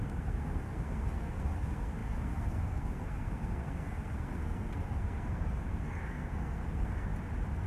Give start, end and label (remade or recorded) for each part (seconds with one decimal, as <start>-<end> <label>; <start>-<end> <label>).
0.0-7.1 remade; 7.1-7.7 recorded